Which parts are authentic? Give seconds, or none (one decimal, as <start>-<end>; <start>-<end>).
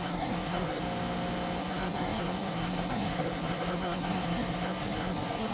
0.8-1.6